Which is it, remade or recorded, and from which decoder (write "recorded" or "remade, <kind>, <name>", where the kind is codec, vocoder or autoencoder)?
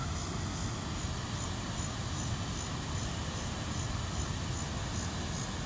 recorded